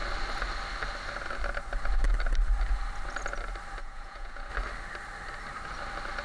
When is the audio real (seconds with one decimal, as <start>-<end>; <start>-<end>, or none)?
0.0-3.8; 4.5-6.2